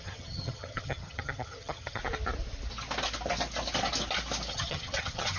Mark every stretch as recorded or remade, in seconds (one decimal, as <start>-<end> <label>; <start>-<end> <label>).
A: 0.0-2.0 remade; 2.0-4.5 recorded; 4.5-5.4 remade

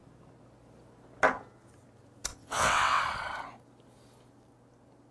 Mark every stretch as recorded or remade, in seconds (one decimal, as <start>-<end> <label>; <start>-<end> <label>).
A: 0.0-2.3 recorded; 2.3-3.0 remade; 3.0-5.1 recorded

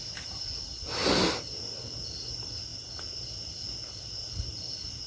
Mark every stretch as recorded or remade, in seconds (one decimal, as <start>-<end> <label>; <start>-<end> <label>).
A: 0.0-5.1 recorded

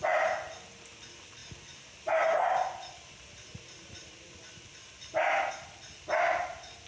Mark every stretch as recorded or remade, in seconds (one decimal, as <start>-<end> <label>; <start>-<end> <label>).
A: 0.0-6.9 recorded